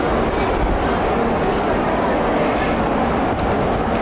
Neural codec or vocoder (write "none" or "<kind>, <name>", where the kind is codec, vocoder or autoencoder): none